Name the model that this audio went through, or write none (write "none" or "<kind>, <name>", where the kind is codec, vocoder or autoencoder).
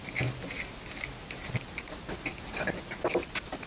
none